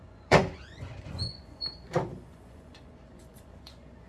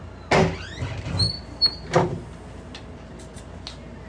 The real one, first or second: second